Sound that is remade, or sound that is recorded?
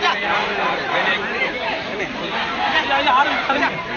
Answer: remade